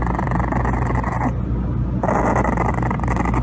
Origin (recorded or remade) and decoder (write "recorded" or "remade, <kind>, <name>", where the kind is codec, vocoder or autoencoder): recorded